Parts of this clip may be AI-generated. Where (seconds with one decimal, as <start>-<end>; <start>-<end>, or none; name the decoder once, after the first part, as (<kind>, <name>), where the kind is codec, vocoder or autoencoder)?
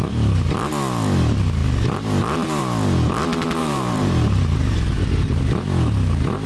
3.6-5.4 (vocoder, BigVGAN v2)